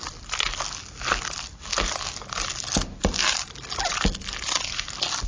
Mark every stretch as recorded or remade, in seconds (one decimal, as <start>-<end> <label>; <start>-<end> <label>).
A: 0.0-5.3 recorded